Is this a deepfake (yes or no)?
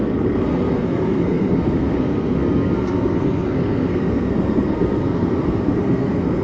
yes